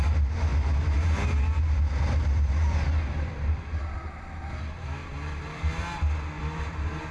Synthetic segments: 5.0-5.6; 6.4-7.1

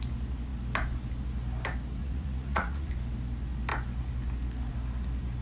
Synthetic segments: 2.0-2.9

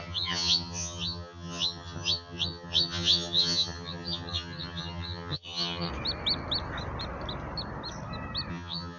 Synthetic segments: 0.0-5.9; 8.5-9.0

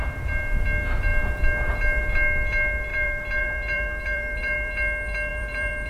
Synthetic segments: 2.9-4.7; 5.3-5.9

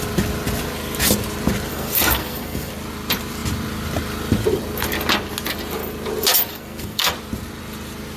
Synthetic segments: 1.7-2.7; 6.5-7.1

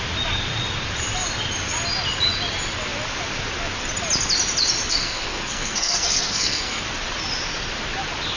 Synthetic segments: 4.9-6.8

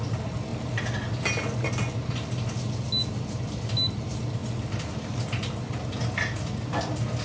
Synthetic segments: none